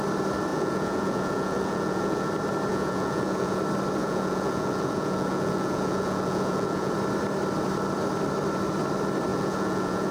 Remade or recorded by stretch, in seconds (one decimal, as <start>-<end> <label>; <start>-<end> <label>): 0.0-0.5 recorded; 0.5-2.3 remade; 2.3-2.7 recorded; 2.7-3.6 remade; 3.6-4.0 recorded; 4.0-6.9 remade; 6.9-9.3 recorded; 9.3-10.1 remade